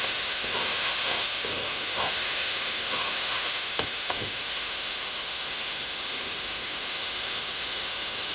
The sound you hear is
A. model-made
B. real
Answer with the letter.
A